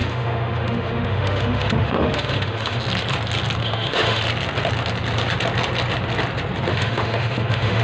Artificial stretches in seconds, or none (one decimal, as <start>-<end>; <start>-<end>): 0.0-2.8; 3.6-4.2; 6.7-7.8